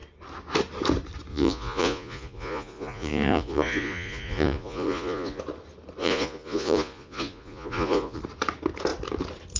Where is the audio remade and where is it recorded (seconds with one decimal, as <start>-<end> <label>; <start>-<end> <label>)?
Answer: 0.0-1.3 recorded; 1.3-5.4 remade; 5.4-6.0 recorded; 6.0-8.2 remade; 8.2-9.6 recorded